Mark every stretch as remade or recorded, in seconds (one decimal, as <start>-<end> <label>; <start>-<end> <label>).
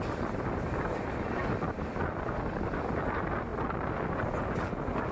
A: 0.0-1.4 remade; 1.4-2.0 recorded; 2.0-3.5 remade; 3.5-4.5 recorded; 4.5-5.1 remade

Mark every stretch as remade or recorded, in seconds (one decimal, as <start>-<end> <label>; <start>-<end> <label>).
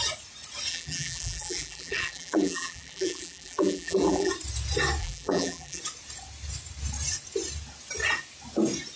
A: 0.0-0.7 recorded; 0.7-4.3 remade; 4.3-5.0 recorded; 5.0-5.8 remade; 5.8-9.0 recorded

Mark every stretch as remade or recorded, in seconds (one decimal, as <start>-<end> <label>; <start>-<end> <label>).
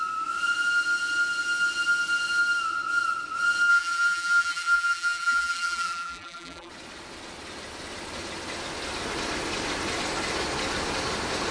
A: 0.0-3.7 recorded; 3.7-6.7 remade; 6.7-11.5 recorded